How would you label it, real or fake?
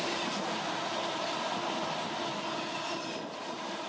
real